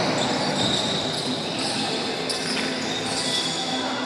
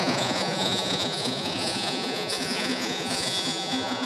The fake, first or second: second